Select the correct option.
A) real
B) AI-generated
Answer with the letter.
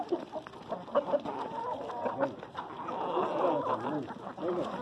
A